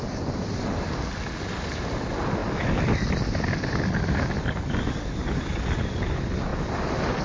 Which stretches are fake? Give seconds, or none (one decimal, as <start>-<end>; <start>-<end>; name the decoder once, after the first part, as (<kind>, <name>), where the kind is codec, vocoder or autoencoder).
5.2-5.7 (vocoder, BigVGAN v2)